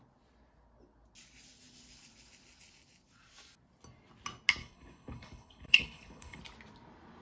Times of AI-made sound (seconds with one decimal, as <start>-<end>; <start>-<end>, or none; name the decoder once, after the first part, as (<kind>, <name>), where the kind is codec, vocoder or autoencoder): 4.6-6.4 (codec, HILCodec)